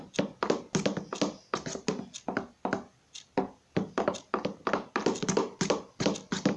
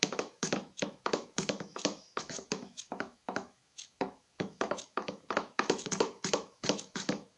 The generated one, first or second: second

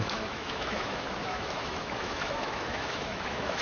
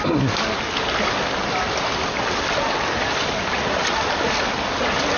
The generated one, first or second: first